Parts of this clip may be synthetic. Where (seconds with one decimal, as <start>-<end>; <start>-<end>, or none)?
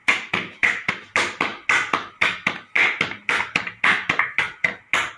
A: 0.0-0.9